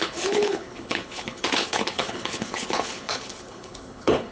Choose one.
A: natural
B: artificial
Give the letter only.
B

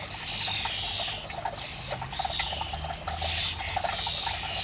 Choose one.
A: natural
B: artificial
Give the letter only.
A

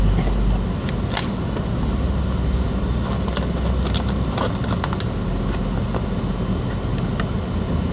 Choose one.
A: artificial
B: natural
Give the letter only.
B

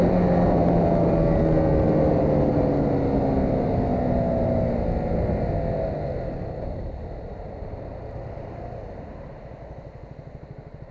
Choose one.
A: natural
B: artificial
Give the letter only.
A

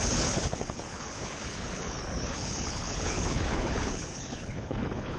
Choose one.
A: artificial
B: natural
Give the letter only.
A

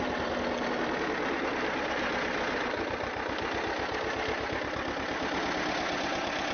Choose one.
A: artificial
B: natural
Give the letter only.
B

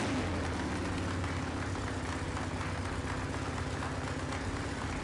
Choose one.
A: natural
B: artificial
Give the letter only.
A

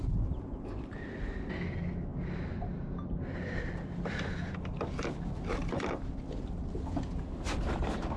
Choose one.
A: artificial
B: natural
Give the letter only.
B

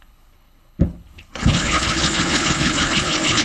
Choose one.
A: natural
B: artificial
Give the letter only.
B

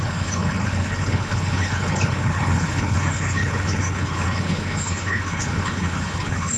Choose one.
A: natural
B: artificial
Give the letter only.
B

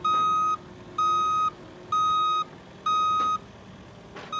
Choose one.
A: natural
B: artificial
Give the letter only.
A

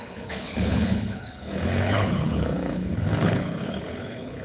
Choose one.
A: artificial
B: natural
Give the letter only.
A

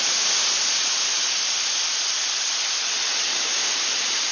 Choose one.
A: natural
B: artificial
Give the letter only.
A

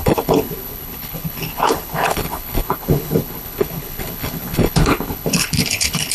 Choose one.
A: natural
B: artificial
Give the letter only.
B